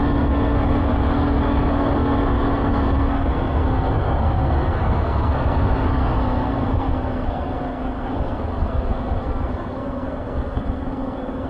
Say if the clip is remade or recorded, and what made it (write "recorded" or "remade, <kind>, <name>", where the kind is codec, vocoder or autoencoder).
remade, codec, SNAC